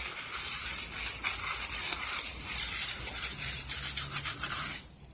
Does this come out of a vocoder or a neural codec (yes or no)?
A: no